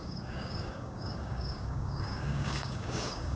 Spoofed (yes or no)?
yes